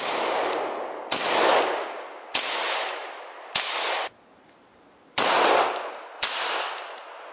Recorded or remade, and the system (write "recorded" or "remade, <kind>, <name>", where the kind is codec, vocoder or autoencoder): recorded